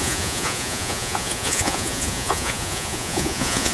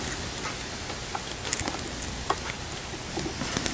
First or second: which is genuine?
second